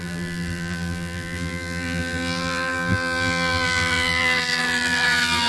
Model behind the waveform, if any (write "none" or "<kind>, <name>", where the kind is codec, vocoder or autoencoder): vocoder, BigVGAN v2